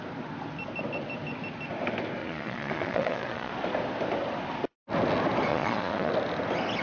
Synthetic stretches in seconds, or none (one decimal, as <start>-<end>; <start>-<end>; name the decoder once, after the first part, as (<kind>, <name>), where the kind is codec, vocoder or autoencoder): 2.2-3.5 (vocoder, Vocos); 5.5-6.1